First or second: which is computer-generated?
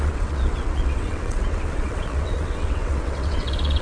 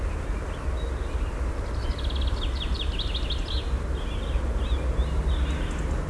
first